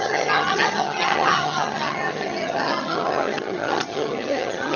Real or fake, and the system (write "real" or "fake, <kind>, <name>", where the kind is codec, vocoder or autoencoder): fake, vocoder, HiFi-GAN